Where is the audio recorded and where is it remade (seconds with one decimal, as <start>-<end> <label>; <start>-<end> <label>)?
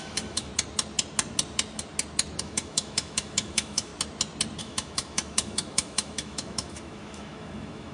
0.0-0.5 remade; 0.5-2.4 recorded; 2.4-3.9 remade; 3.9-4.6 recorded; 4.6-7.9 remade